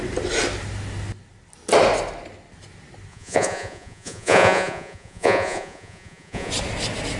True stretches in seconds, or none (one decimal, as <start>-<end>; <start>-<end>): 0.0-3.1; 6.5-7.2